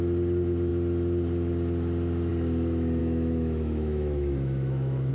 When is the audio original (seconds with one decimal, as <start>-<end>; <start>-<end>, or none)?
0.0-3.0